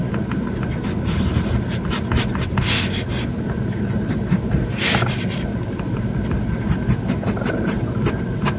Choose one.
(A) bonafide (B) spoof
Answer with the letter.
A